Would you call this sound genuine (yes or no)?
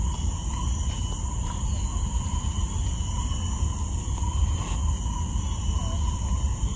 yes